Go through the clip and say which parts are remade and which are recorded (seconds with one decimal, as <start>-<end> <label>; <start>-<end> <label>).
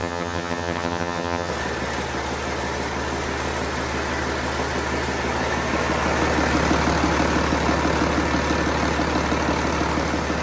0.0-1.5 remade; 1.5-10.4 recorded